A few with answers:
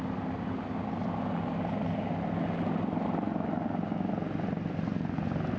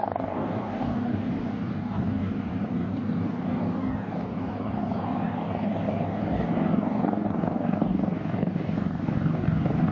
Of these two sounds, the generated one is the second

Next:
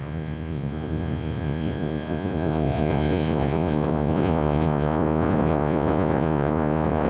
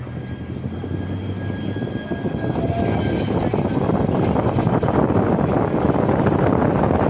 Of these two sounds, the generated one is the first